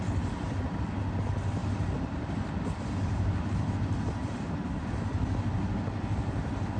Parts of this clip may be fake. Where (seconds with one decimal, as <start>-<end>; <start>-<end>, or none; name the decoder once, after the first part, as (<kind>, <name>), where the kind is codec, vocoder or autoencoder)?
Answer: 1.6-3.7 (vocoder, BigVGAN v2); 4.2-4.8